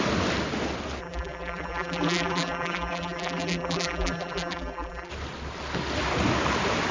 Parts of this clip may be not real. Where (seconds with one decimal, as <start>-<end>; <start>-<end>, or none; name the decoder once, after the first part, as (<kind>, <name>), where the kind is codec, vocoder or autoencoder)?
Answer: 1.0-5.1 (vocoder, BigVGAN v2)